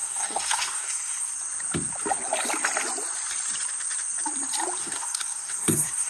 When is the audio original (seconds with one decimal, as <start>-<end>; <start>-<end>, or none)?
1.3-4.8